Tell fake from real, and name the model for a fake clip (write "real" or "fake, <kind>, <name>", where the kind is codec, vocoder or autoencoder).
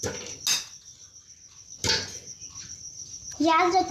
real